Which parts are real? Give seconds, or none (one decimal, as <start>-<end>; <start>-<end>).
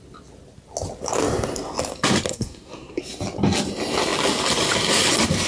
0.0-2.3; 3.0-5.5